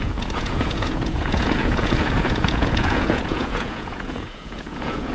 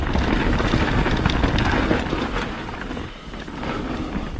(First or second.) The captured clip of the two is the second